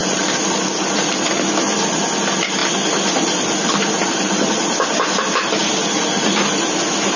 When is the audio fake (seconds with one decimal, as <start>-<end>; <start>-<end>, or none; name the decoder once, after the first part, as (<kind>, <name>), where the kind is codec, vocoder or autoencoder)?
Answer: none